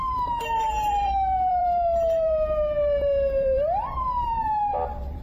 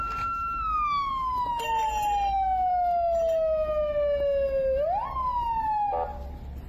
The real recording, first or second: second